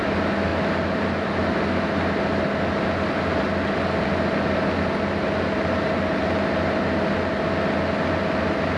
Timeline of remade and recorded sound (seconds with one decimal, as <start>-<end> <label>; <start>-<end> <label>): 0.0-8.8 recorded